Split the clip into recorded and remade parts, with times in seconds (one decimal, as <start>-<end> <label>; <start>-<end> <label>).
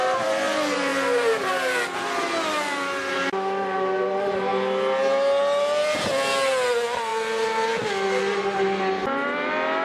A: 0.0-9.8 recorded